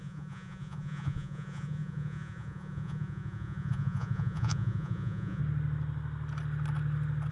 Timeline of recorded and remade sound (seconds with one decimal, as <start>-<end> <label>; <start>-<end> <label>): 0.0-5.4 remade; 5.4-7.3 recorded